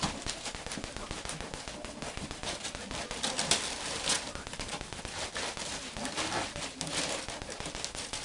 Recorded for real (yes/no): yes